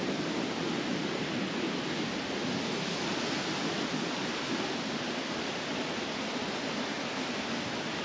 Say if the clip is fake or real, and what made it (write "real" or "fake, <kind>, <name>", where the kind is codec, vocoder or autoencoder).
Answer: real